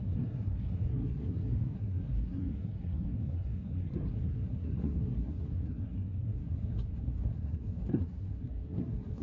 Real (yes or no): no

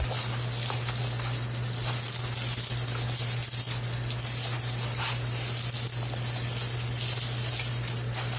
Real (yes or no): yes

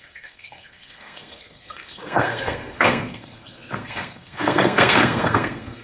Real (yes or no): no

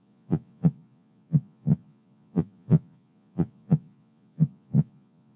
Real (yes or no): no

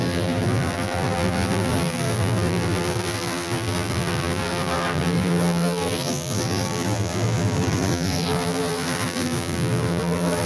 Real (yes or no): no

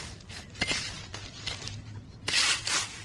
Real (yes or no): yes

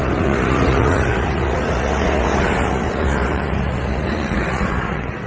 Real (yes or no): no